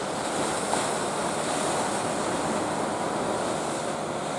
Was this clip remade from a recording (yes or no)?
no